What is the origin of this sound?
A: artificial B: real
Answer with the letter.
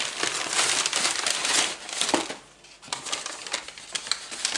B